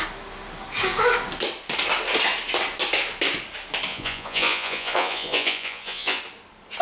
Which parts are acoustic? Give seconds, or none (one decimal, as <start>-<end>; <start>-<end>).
0.0-3.9; 6.2-6.8